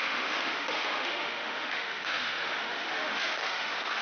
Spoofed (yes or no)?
yes